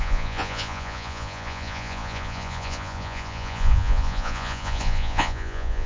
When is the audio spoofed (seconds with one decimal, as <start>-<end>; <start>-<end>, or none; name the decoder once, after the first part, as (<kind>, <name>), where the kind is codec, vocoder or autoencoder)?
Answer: 0.0-5.9 (vocoder, Vocos)